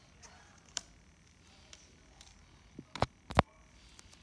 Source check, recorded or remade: recorded